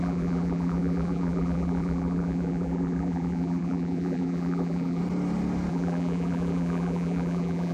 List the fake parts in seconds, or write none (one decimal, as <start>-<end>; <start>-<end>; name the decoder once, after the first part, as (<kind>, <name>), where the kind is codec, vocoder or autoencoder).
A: 0.0-5.0 (vocoder, BigVGAN v2); 5.7-7.7

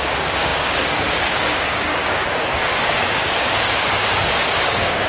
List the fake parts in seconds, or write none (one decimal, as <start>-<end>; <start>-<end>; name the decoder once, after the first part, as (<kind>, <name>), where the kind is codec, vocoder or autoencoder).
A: 0.0-5.1 (codec, DAC)

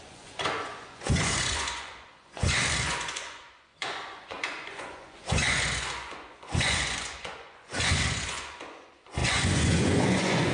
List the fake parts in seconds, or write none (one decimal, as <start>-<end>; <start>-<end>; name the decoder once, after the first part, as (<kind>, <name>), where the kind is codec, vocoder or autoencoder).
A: 0.0-10.5 (vocoder, Vocos)

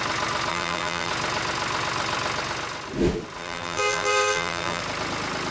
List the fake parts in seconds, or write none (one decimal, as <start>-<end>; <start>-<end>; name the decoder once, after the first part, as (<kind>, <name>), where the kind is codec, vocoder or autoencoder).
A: 0.5-1.1 (vocoder, BigVGAN v2); 3.4-4.8

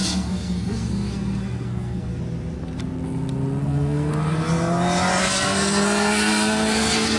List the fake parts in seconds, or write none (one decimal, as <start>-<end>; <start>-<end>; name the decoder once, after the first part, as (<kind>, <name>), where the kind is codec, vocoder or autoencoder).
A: 0.0-2.2 (codec, SNAC); 3.6-4.1; 5.2-7.2

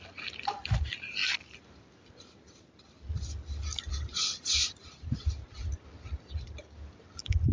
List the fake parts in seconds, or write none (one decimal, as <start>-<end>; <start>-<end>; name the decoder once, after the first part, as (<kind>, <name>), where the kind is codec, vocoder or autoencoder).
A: none

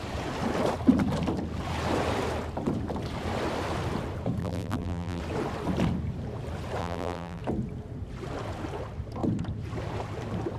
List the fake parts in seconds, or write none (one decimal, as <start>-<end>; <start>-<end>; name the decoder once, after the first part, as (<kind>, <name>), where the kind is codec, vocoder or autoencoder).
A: 4.4-5.2 (vocoder, BigVGAN v2); 6.8-7.4